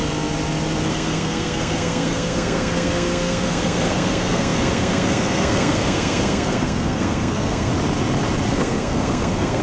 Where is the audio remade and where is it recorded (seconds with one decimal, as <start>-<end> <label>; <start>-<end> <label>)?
0.0-0.9 recorded; 0.9-7.7 remade; 7.7-8.5 recorded; 8.5-9.6 remade